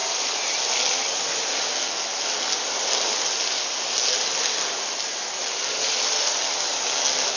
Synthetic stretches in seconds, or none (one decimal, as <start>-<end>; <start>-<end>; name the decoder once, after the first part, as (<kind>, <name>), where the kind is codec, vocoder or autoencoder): 0.0-1.7 (vocoder, BigVGAN v2); 2.6-3.6; 5.4-6.7